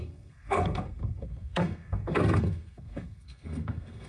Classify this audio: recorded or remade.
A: remade